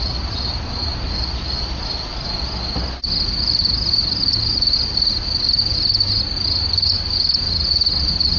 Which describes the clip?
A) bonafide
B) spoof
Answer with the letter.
A